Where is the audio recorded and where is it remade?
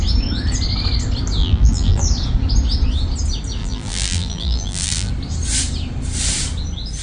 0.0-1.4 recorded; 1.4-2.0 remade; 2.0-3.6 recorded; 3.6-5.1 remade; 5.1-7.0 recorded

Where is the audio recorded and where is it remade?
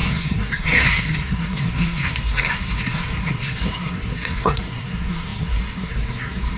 0.0-6.6 remade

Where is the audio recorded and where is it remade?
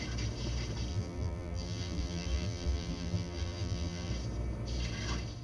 0.0-0.9 recorded; 0.9-4.1 remade; 4.1-5.4 recorded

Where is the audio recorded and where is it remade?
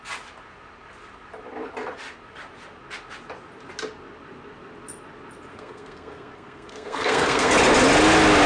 0.0-5.5 recorded; 5.5-7.5 remade; 7.5-8.5 recorded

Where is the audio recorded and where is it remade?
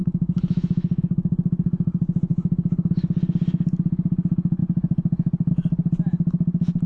0.0-1.0 remade; 1.0-2.3 recorded; 2.3-2.9 remade; 2.9-6.9 recorded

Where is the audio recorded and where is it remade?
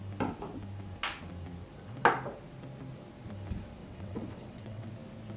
0.0-3.8 recorded; 3.8-4.9 remade; 4.9-5.4 recorded